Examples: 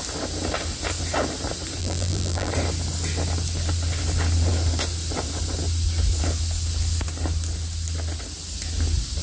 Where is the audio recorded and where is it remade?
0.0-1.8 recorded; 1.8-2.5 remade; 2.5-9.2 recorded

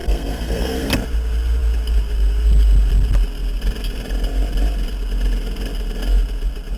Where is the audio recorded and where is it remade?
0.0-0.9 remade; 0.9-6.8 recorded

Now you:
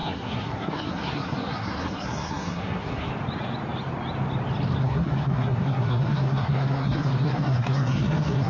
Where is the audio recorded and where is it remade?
0.0-3.1 remade; 3.1-4.8 recorded; 4.8-8.5 remade

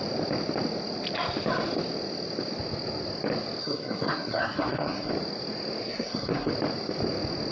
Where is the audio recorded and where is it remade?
0.0-3.6 recorded; 3.6-5.1 remade; 5.1-5.8 recorded; 5.8-6.5 remade; 6.5-7.5 recorded

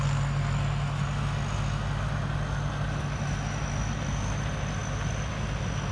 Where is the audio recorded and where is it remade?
0.0-5.9 recorded